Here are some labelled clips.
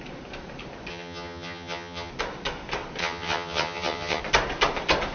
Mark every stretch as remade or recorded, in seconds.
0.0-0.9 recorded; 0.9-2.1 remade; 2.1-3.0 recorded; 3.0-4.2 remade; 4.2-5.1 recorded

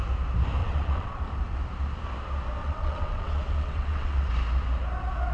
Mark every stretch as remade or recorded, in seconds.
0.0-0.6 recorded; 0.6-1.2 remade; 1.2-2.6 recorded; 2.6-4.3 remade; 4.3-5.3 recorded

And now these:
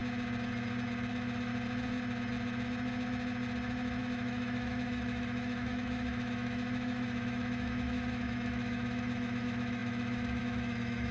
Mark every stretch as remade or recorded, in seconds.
0.0-1.1 recorded; 1.1-1.5 remade; 1.5-4.0 recorded; 4.0-11.1 remade

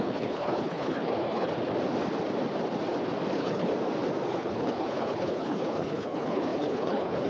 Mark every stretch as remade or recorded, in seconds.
0.0-1.5 remade; 1.5-3.3 recorded; 3.3-3.7 remade; 3.7-4.3 recorded; 4.3-7.3 remade

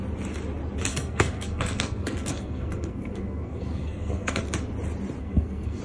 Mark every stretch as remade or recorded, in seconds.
0.0-0.9 recorded; 0.9-4.4 remade; 4.4-5.2 recorded; 5.2-5.8 remade

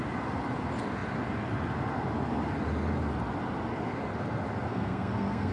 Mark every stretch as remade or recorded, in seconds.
0.0-4.7 recorded; 4.7-5.5 remade

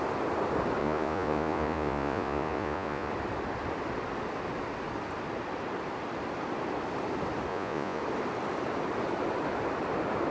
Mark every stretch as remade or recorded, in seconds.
0.0-0.8 recorded; 0.8-3.1 remade; 3.1-7.5 recorded; 7.5-8.0 remade; 8.0-10.3 recorded

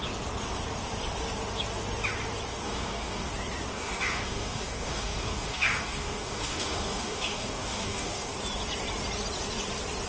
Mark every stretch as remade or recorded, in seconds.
0.0-2.5 recorded; 2.5-3.3 remade; 3.3-3.7 recorded; 3.7-8.3 remade; 8.3-10.1 recorded